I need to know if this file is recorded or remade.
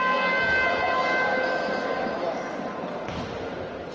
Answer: recorded